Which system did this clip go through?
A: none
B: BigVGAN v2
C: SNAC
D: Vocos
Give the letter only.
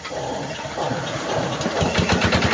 A